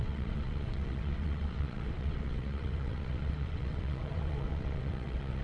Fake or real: fake